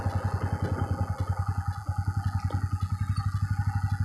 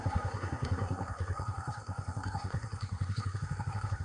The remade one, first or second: second